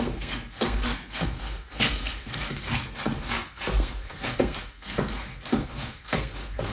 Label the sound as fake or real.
fake